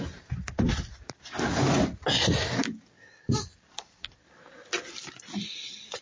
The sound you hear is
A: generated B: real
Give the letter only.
B